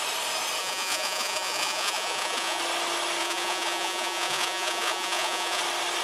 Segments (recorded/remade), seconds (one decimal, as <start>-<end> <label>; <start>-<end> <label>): 0.0-0.6 recorded; 0.6-2.6 remade; 2.6-3.2 recorded; 3.2-5.6 remade; 5.6-6.0 recorded

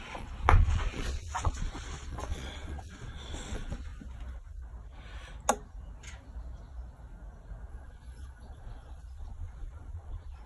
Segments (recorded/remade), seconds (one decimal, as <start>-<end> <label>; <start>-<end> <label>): 0.0-3.9 remade; 3.9-7.7 recorded; 7.7-10.5 remade

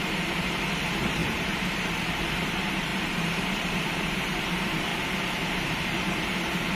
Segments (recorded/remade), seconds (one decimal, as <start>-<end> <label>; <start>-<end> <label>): 0.0-4.9 remade; 4.9-5.5 recorded; 5.5-6.7 remade